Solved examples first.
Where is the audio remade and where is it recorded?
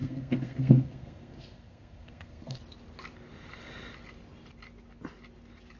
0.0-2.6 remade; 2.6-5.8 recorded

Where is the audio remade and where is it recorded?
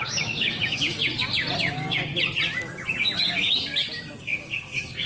0.0-1.0 remade; 1.0-1.7 recorded; 1.7-2.1 remade; 2.1-3.2 recorded; 3.2-3.7 remade; 3.7-4.2 recorded; 4.2-5.1 remade